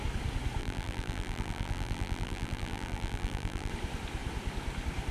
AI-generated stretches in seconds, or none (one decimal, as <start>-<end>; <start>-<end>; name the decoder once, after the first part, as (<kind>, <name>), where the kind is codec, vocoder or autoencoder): 0.6-3.7 (vocoder, BigVGAN v2)

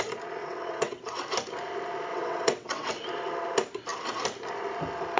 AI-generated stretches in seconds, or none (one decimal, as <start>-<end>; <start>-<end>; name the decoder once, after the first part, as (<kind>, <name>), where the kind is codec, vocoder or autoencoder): 0.4-1.2 (vocoder, WaveNeXt); 2.1-2.9

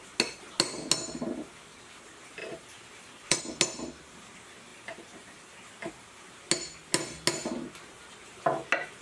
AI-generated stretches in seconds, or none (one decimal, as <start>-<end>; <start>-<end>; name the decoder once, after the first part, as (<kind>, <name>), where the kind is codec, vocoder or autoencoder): 2.4-3.4 (vocoder, BigVGAN v2); 4.7-5.7

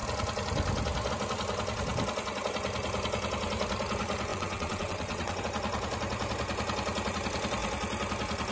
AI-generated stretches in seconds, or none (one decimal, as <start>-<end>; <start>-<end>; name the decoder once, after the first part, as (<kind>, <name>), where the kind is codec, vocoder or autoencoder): 4.3-5.4 (vocoder, WaveNeXt)